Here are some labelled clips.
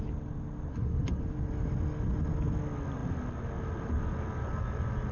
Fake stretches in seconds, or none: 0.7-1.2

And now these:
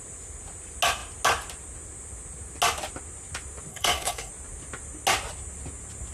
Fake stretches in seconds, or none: 3.7-4.3

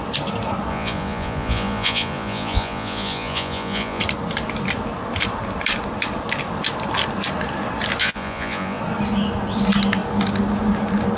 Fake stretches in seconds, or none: 0.7-4.0; 8.0-8.8

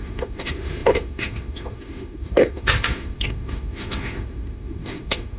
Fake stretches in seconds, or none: 0.0-5.4

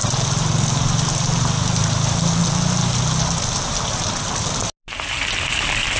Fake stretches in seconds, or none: none

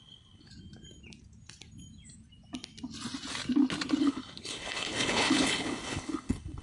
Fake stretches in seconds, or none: 0.0-0.5; 4.0-6.6